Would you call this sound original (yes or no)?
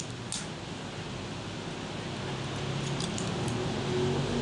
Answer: yes